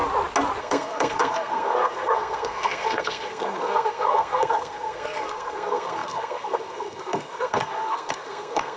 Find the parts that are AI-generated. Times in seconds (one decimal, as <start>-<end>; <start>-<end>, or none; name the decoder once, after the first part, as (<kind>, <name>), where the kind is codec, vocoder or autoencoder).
0.6-8.8 (codec, SNAC)